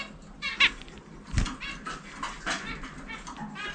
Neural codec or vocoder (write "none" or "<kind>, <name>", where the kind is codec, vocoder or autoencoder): none